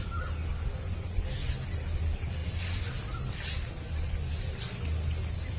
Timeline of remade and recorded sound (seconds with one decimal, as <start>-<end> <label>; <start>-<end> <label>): 0.0-5.6 recorded